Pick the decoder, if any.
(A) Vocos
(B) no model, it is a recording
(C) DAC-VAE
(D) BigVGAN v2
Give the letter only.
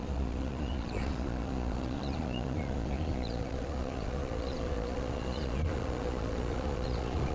A